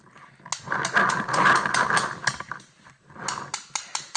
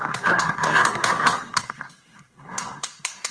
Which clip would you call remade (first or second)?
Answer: second